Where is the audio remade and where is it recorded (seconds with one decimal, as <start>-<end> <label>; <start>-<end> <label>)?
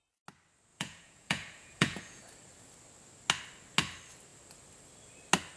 0.0-0.7 recorded; 0.7-2.2 remade; 2.2-5.6 recorded